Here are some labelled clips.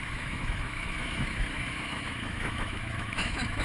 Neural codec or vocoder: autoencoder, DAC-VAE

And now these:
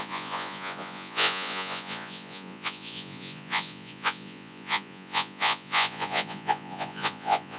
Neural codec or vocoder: vocoder, Vocos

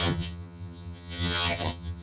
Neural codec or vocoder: vocoder, HiFi-GAN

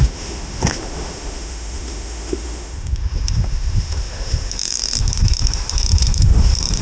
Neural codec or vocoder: autoencoder, DAC-VAE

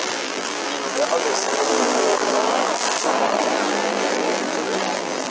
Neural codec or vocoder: vocoder, BigVGAN v2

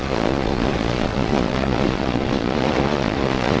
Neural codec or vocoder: vocoder, Vocos